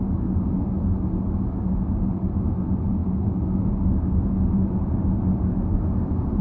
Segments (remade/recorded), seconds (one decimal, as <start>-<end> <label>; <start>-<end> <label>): 0.0-6.4 recorded